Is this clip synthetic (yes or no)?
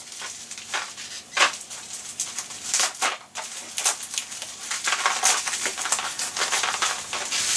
no